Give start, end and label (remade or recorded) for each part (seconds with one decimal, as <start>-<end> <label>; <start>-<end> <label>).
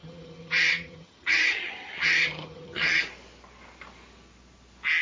0.0-3.0 remade; 3.0-5.0 recorded